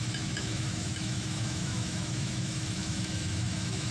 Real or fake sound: fake